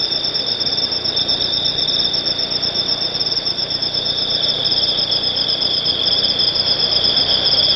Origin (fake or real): real